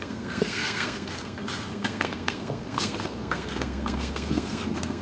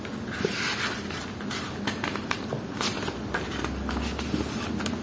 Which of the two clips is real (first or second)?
second